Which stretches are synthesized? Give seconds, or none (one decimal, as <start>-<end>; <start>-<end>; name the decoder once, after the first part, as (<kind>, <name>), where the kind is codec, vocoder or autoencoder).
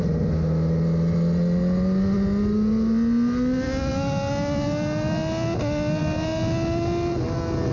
none